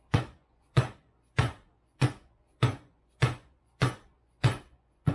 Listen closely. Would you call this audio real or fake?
fake